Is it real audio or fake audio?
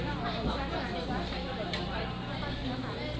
real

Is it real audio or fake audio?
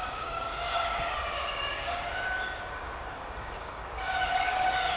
fake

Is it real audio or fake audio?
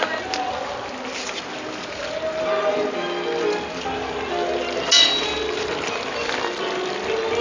real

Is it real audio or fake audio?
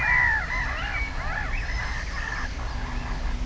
real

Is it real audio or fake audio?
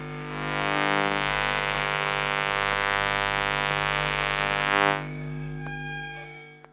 fake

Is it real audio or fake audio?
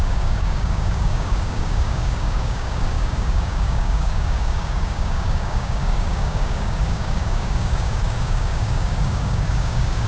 fake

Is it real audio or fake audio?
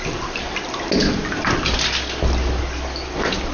real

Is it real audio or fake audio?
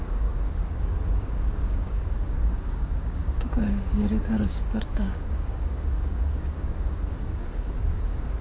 fake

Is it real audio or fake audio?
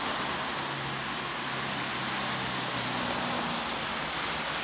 real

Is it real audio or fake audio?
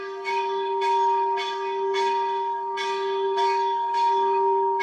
fake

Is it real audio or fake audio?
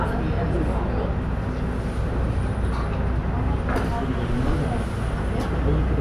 real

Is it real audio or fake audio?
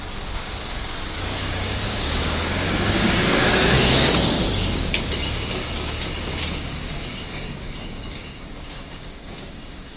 fake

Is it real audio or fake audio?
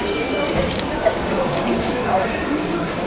fake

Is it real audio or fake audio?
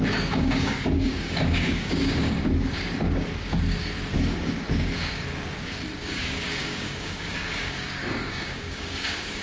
fake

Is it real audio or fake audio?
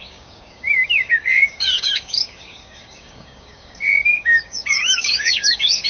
fake